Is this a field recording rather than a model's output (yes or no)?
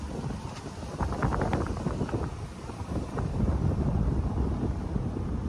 yes